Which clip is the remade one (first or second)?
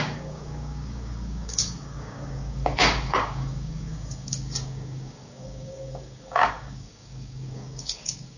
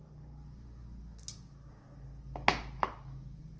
first